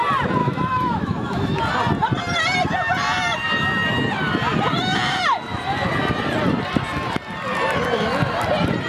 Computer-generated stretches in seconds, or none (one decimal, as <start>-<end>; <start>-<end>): 0.4-1.6